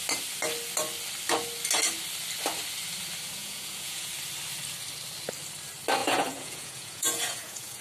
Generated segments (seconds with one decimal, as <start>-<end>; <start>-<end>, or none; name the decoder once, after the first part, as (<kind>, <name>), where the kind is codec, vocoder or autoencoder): 3.4-4.1 (vocoder, Vocos); 6.0-7.8